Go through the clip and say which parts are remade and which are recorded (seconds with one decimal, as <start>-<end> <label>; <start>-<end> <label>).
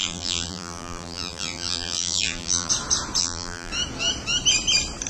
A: 0.0-2.7 remade; 2.7-3.2 recorded; 3.2-3.7 remade; 3.7-5.1 recorded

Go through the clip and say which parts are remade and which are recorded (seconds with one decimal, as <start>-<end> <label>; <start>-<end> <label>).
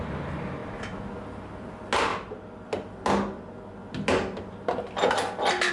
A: 0.0-5.7 recorded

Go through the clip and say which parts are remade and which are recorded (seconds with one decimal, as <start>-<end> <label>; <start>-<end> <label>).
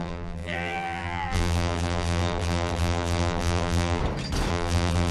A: 0.0-4.0 remade; 4.0-4.5 recorded; 4.5-5.1 remade